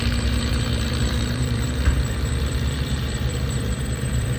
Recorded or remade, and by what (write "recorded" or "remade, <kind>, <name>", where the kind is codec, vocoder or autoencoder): remade, vocoder, BigVGAN v2